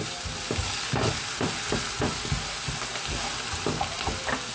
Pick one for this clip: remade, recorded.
recorded